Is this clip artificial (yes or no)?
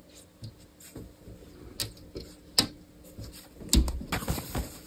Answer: no